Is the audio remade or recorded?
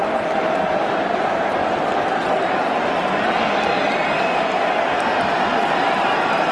remade